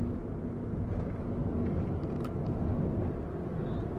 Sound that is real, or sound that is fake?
real